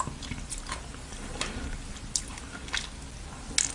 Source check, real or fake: real